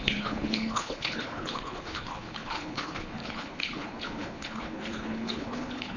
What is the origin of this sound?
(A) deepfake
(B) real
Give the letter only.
A